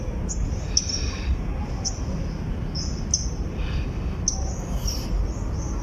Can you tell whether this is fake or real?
real